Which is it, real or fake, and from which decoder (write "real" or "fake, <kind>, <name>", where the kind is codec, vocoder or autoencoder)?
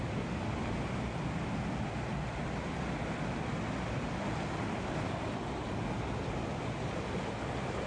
real